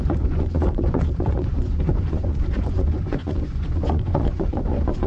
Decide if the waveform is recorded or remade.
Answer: remade